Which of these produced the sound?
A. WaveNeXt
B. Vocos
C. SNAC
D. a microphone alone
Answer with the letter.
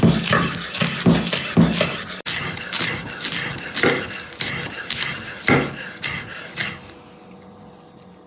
D